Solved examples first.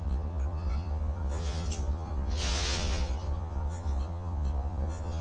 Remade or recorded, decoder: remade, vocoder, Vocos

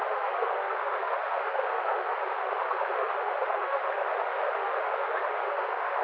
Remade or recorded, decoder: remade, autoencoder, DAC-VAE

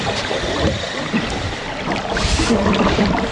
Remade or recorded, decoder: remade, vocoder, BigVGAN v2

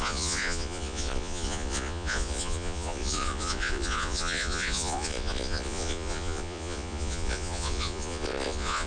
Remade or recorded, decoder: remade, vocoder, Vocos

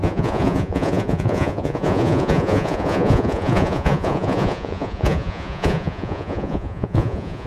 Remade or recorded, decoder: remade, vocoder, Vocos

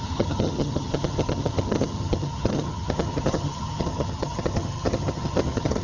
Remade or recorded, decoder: remade, vocoder, HiFi-GAN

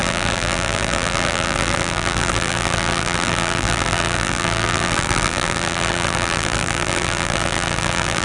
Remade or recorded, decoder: remade, vocoder, BigVGAN v2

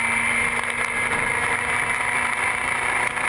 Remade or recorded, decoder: recorded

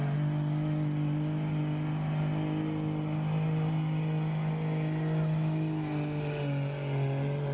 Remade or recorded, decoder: recorded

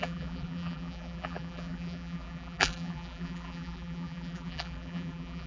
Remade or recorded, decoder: remade, vocoder, BigVGAN v2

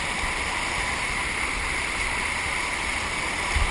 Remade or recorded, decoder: recorded